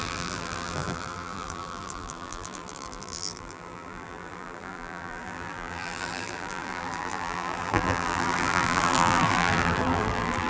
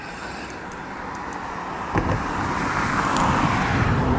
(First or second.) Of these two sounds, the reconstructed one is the first